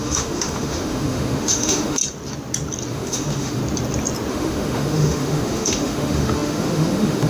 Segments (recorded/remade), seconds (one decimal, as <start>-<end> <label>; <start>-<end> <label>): 0.0-2.0 remade; 2.0-2.9 recorded; 2.9-3.6 remade; 3.6-4.3 recorded; 4.3-7.3 remade